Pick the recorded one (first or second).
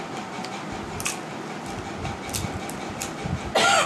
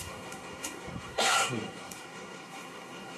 first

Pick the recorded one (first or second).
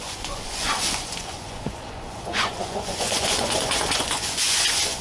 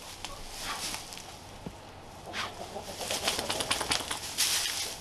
second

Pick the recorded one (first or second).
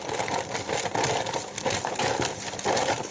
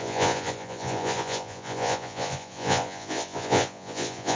first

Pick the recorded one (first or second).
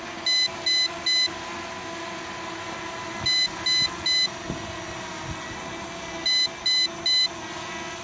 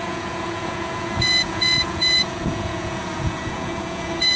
first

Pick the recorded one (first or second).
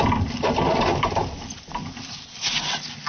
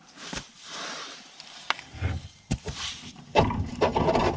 first